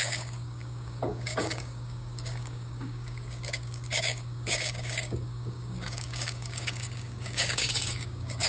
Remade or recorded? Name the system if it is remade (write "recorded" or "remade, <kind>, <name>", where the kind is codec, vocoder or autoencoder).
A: remade, codec, DAC